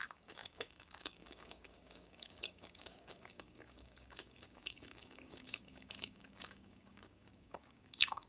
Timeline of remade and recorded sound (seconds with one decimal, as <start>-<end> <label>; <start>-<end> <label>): 0.0-8.3 remade

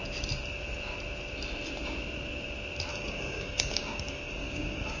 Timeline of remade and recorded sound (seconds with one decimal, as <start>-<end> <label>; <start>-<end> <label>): 0.0-2.9 recorded; 2.9-5.0 remade

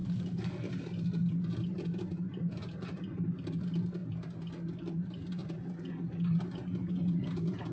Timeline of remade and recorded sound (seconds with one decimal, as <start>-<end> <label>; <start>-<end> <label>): 0.0-0.7 remade; 0.7-7.7 recorded

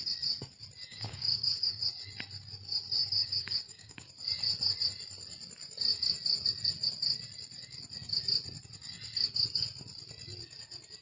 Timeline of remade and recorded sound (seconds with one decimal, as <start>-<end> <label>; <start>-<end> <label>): 0.0-0.9 recorded; 0.9-1.9 remade; 1.9-3.0 recorded; 3.0-4.1 remade; 4.1-11.0 recorded

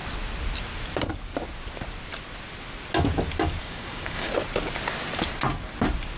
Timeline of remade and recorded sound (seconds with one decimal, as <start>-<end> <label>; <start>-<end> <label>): 0.0-3.6 recorded; 3.6-4.3 remade; 4.3-6.2 recorded

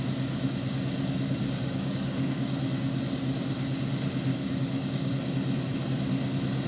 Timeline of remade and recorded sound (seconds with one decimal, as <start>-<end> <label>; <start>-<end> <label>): 0.0-1.4 recorded; 1.4-2.6 remade; 2.6-4.3 recorded; 4.3-5.1 remade; 5.1-6.7 recorded